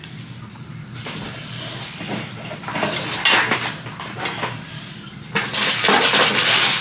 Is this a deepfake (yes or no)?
no